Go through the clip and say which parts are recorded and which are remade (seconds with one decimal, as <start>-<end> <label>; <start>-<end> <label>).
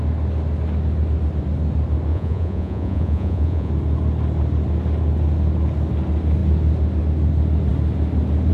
0.0-2.1 recorded; 2.1-3.7 remade; 3.7-8.5 recorded